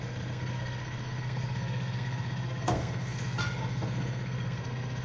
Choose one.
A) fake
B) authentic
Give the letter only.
A